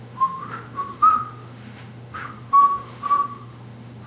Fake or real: fake